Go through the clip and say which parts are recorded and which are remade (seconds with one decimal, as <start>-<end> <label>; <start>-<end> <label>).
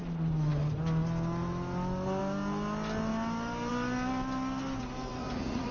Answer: 0.0-5.2 recorded; 5.2-5.7 remade